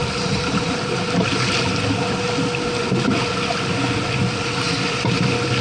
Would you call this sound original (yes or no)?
yes